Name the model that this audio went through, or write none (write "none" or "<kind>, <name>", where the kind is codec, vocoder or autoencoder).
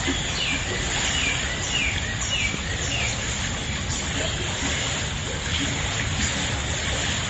none